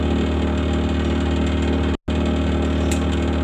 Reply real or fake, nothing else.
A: real